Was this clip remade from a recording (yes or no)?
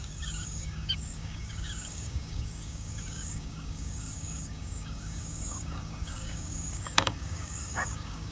yes